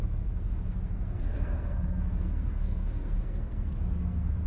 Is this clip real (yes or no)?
no